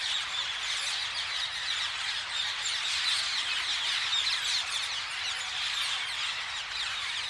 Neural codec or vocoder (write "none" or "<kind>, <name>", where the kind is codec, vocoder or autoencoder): none